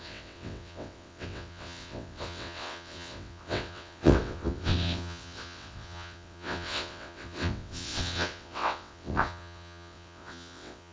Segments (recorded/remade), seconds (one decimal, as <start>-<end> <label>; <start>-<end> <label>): 0.0-10.9 remade